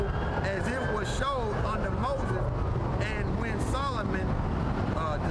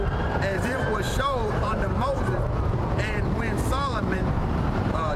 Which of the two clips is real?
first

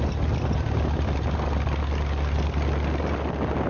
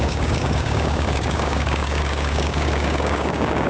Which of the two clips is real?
first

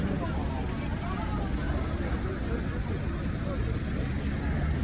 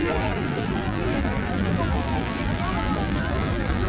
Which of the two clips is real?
first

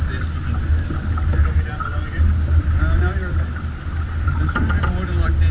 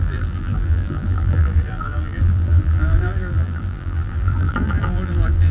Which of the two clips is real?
first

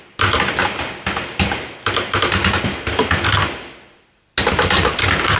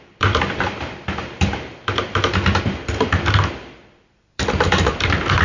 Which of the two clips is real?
first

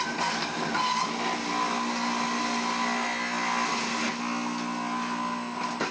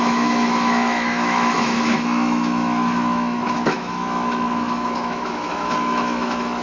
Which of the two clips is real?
first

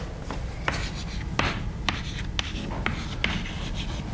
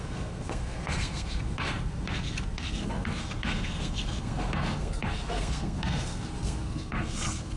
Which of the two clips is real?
first